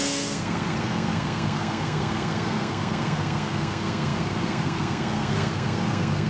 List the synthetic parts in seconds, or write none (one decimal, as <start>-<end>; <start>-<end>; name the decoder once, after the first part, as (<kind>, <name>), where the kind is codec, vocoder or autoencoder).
0.0-6.3 (codec, SNAC)